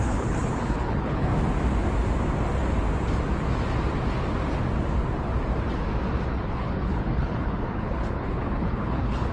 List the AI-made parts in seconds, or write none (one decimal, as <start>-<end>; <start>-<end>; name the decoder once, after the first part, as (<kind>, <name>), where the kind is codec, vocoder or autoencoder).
0.0-1.3 (codec, HILCodec); 6.3-9.3